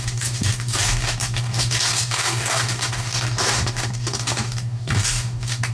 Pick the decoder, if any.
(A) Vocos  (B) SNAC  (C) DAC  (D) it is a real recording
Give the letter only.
C